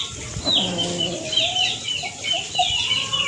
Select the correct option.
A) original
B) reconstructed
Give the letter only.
A